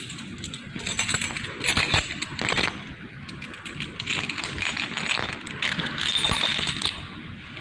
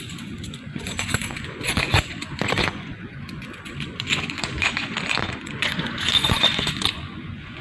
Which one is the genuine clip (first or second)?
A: first